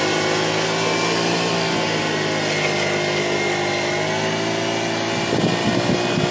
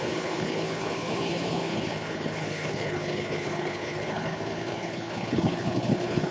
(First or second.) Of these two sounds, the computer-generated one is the second